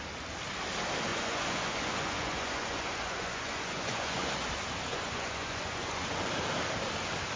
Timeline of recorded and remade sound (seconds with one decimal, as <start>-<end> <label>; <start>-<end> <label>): 0.0-1.1 recorded; 1.1-4.3 remade; 4.3-4.9 recorded; 4.9-6.3 remade; 6.3-7.4 recorded